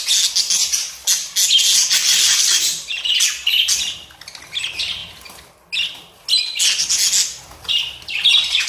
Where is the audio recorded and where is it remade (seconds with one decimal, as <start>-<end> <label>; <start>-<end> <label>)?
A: 0.0-2.0 recorded; 2.0-2.9 remade; 2.9-8.7 recorded